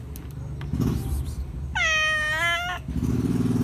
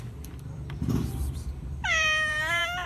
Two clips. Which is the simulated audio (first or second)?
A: second